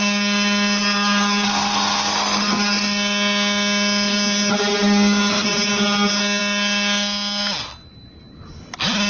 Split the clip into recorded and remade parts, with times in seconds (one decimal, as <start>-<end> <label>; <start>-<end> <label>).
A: 0.0-2.1 recorded; 2.1-2.6 remade; 2.6-9.1 recorded